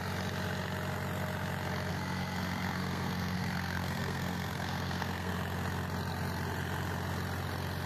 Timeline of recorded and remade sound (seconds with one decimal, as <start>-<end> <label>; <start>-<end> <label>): 0.0-1.9 recorded; 1.9-5.3 remade; 5.3-7.9 recorded